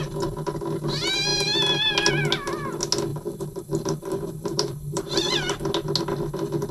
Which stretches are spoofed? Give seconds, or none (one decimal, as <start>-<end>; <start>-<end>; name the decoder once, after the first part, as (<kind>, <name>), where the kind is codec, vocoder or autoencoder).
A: 3.1-5.7 (vocoder, BigVGAN v2)